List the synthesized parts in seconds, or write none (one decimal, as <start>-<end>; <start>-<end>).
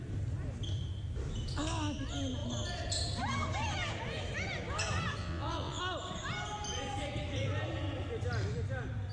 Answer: 5.2-5.8